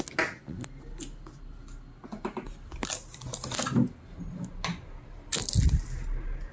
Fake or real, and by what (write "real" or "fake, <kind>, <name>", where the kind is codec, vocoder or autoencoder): real